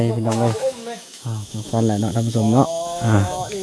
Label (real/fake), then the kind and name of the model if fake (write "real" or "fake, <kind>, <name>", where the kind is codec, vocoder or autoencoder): fake, autoencoder, DAC-VAE